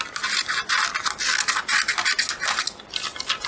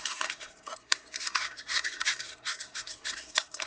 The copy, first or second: second